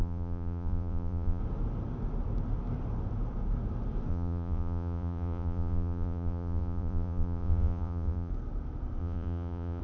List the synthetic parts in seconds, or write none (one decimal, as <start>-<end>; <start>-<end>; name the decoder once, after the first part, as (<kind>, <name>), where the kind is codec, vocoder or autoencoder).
0.0-1.4 (vocoder, Vocos); 4.1-8.3; 9.0-9.8